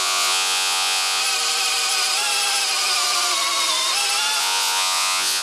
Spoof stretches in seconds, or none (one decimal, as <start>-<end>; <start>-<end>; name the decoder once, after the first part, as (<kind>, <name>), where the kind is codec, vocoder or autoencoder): 0.0-1.2 (vocoder, Vocos); 4.4-5.4